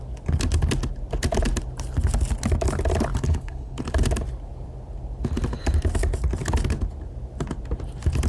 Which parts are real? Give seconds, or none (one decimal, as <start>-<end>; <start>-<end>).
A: 0.0-3.1; 3.8-8.3